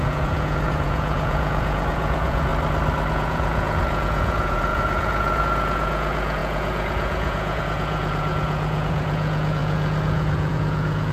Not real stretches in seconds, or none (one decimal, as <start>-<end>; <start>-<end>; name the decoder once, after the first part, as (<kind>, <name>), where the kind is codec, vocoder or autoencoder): 0.0-2.5 (vocoder, Vocos); 3.1-11.1